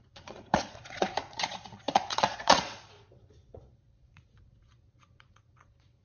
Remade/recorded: remade